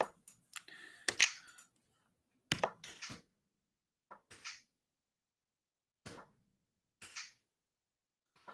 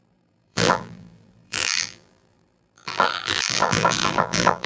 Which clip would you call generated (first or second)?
second